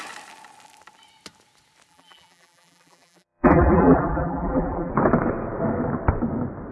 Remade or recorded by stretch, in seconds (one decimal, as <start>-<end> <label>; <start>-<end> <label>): 0.0-1.9 recorded; 1.9-4.9 remade; 4.9-6.7 recorded